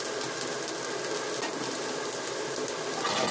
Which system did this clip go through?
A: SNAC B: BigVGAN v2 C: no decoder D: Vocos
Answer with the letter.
C